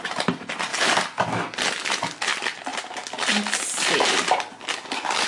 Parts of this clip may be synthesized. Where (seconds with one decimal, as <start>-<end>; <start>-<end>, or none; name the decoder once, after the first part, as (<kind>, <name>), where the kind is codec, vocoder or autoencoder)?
none